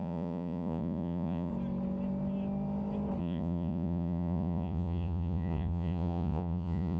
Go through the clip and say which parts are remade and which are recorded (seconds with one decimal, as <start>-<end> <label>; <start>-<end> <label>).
0.0-1.5 remade; 1.5-3.2 recorded; 3.2-7.0 remade